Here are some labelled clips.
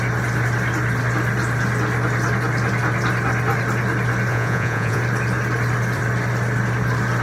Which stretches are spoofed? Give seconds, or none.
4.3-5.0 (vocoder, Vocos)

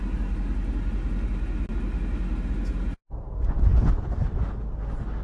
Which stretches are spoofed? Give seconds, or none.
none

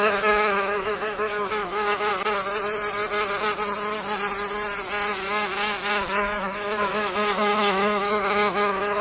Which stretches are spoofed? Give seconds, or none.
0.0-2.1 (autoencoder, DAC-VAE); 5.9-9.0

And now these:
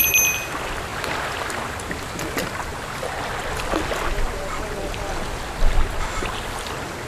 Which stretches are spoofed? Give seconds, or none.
none

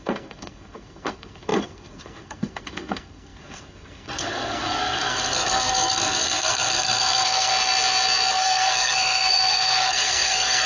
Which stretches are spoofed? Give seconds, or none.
0.0-7.5 (codec, SNAC); 8.3-10.7

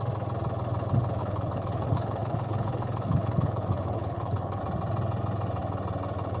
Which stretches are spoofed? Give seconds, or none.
1.2-4.6 (codec, HILCodec)

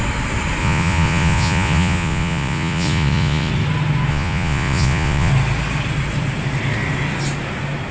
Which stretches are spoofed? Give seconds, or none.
0.6-3.5 (vocoder, Vocos); 4.1-5.3